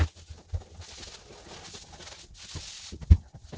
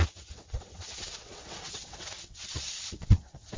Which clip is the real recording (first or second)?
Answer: first